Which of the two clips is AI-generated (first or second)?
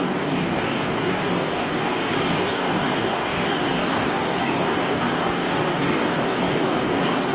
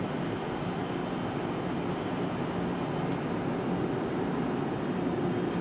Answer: first